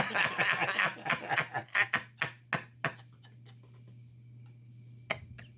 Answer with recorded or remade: recorded